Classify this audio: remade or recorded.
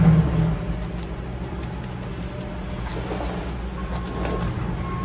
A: recorded